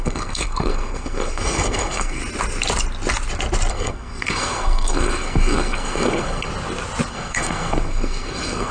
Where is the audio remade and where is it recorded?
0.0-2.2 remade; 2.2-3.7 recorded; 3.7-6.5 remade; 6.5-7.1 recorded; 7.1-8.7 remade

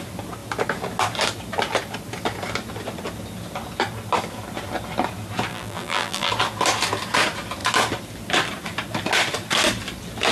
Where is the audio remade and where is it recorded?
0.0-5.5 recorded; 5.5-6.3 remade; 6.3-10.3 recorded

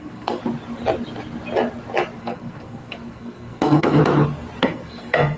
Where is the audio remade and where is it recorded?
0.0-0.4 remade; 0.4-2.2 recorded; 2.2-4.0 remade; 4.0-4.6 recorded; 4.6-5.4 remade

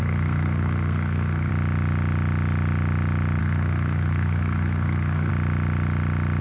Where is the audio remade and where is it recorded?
0.0-1.5 remade; 1.5-3.4 recorded; 3.4-5.3 remade; 5.3-6.4 recorded

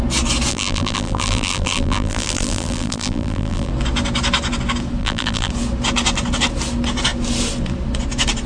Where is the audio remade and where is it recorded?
0.0-0.5 recorded; 0.5-3.7 remade; 3.7-5.0 recorded; 5.0-5.5 remade; 5.5-8.5 recorded

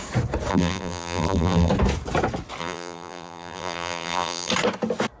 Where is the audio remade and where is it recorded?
0.0-0.5 recorded; 0.5-1.7 remade; 1.7-2.6 recorded; 2.6-4.5 remade; 4.5-5.2 recorded